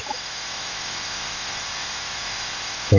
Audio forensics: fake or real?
fake